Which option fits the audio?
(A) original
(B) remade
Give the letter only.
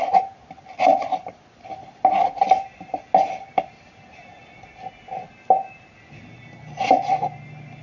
B